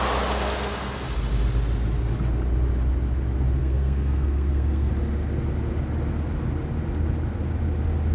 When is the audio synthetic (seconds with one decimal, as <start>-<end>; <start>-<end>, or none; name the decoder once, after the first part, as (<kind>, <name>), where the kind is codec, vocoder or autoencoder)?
3.6-4.9 (codec, SNAC)